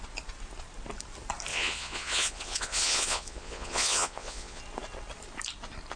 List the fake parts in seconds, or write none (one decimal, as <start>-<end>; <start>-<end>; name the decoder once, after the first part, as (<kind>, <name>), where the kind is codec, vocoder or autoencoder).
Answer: 1.5-4.6 (vocoder, Vocos)